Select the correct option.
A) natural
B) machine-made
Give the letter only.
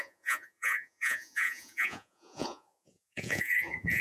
B